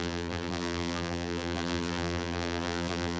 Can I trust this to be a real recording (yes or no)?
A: no